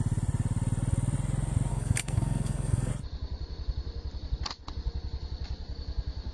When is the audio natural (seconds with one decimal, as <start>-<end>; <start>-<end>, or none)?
0.0-1.7; 2.9-6.3